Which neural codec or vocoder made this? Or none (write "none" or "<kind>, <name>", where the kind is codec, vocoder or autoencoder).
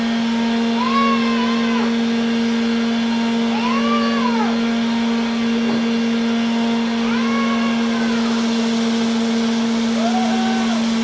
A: none